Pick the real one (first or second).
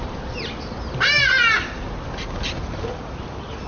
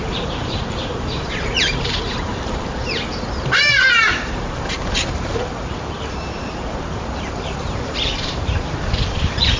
first